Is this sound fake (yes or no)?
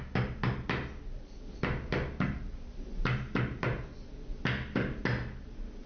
no